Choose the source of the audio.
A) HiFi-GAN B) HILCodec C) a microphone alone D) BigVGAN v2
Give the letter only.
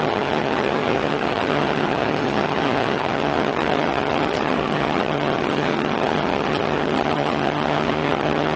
A